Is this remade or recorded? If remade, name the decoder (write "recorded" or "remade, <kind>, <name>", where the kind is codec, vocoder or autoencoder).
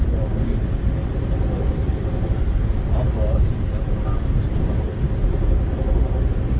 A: recorded